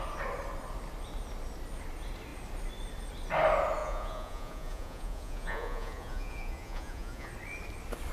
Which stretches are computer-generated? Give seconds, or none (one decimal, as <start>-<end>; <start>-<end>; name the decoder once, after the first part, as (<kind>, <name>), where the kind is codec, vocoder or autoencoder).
3.8-7.3 (vocoder, Vocos)